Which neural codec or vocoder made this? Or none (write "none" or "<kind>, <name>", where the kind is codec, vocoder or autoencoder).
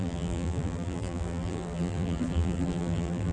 vocoder, BigVGAN v2